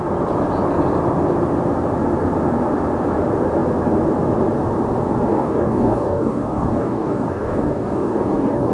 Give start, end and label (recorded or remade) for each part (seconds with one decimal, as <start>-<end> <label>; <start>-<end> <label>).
0.0-5.3 recorded; 5.3-8.7 remade